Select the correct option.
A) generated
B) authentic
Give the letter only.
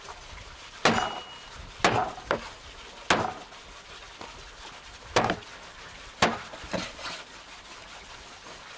B